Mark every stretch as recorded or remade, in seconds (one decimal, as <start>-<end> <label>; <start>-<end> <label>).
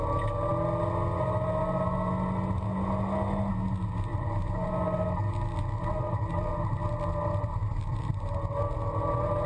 0.0-4.1 recorded; 4.1-4.7 remade; 4.7-7.6 recorded; 7.6-8.4 remade; 8.4-9.5 recorded